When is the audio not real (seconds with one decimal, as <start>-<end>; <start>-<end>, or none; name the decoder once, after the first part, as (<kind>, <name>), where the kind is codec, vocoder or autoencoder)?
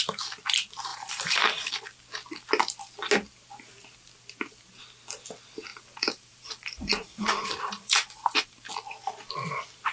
0.9-1.7 (vocoder, BigVGAN v2); 5.7-8.7